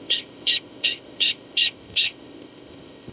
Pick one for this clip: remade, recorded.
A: remade